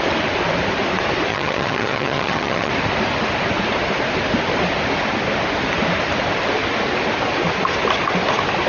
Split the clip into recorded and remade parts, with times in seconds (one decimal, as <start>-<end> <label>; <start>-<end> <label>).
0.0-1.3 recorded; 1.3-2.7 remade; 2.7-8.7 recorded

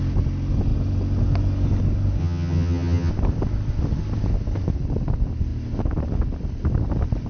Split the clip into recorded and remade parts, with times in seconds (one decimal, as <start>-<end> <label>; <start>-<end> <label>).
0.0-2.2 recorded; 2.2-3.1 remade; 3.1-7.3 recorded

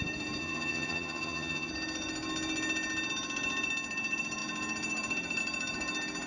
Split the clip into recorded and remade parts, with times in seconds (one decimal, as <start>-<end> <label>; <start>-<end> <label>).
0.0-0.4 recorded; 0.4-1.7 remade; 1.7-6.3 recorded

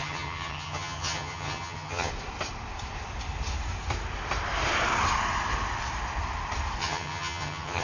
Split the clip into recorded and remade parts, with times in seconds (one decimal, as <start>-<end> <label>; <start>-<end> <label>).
0.0-2.1 remade; 2.1-6.8 recorded; 6.8-7.8 remade